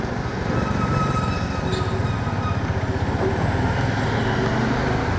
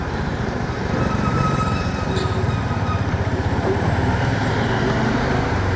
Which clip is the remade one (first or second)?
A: second